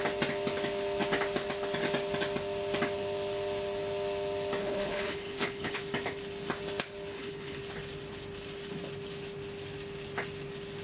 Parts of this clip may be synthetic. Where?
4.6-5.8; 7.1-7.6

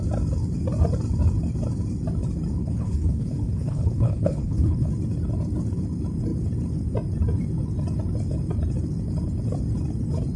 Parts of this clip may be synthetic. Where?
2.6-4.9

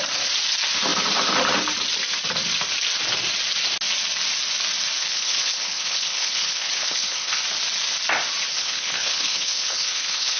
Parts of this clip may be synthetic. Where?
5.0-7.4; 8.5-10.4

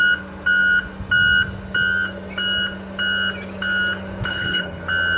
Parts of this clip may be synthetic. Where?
4.3-4.8

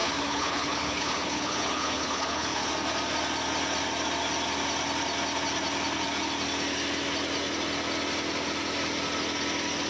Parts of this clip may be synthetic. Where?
0.0-2.7

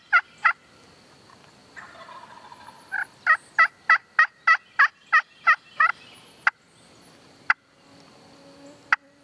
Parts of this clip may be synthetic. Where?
none